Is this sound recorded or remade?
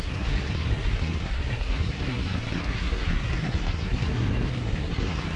remade